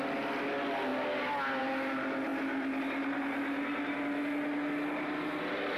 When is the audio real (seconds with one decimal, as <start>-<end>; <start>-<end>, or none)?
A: 0.0-5.8